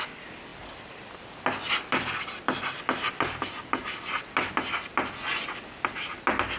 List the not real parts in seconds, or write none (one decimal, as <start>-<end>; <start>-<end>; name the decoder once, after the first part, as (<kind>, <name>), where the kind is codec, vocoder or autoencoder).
none